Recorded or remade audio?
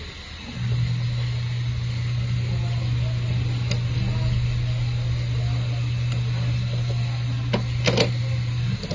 recorded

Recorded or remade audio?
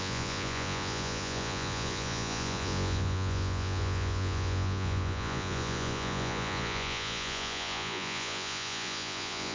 remade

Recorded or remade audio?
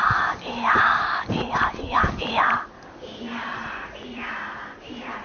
remade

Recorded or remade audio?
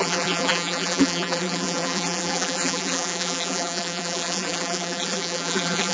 remade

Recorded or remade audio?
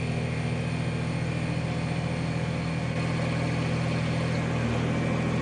recorded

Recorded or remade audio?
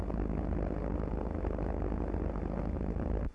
recorded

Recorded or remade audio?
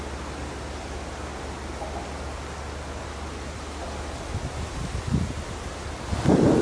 recorded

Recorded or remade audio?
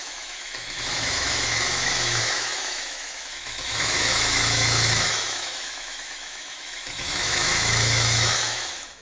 remade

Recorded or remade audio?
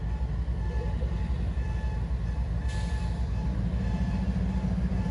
recorded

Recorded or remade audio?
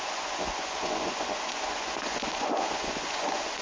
remade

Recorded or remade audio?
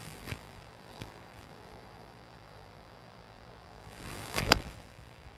remade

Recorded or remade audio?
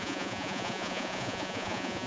remade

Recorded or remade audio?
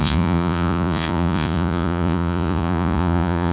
remade